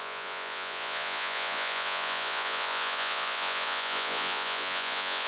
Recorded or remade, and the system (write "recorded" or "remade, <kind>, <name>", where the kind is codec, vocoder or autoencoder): remade, vocoder, Vocos